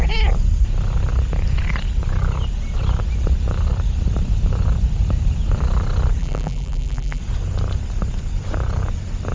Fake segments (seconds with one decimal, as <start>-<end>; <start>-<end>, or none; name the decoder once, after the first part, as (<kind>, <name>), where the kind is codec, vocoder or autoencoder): 6.2-7.2 (vocoder, BigVGAN v2)